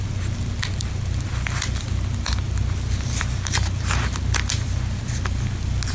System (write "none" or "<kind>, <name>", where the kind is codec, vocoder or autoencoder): none